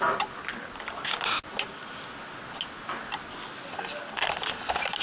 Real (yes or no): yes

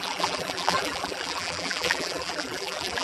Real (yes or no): no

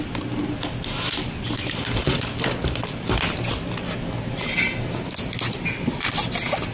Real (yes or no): yes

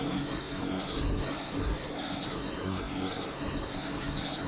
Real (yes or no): no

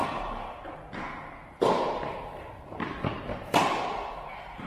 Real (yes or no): yes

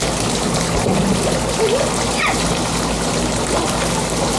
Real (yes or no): yes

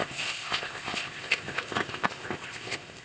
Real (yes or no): no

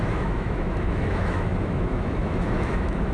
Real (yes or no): no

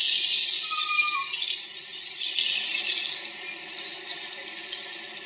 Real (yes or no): yes